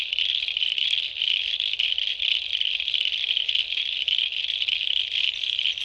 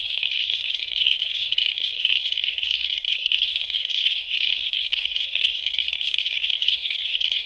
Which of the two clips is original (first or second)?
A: first